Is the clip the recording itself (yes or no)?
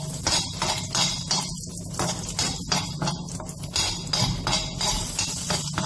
yes